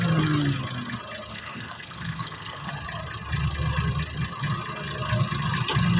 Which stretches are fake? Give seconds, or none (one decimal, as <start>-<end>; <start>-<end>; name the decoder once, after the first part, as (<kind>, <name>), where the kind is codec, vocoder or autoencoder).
1.3-2.7 (codec, SNAC)